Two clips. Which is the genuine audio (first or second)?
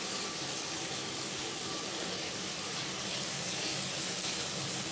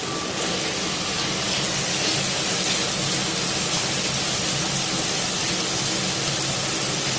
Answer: second